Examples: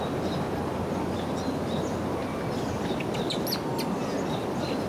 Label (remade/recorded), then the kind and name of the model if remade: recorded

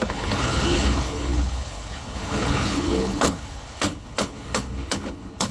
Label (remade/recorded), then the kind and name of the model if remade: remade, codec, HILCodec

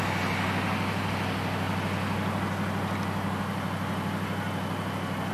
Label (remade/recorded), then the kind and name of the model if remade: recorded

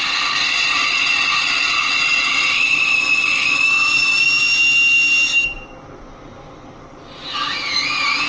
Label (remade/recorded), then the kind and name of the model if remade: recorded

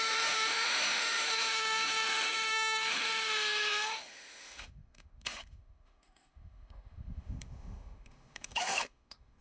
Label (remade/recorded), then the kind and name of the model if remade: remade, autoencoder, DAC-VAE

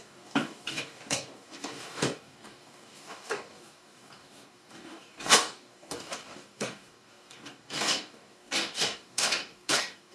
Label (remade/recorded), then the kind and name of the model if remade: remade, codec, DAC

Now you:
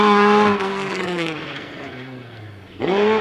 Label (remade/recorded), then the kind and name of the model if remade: remade, codec, SNAC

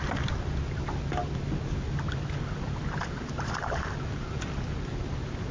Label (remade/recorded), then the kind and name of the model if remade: recorded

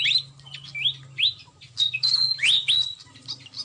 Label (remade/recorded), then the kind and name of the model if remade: recorded